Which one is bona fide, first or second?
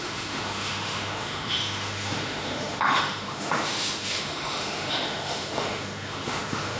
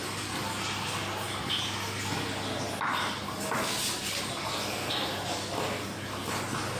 second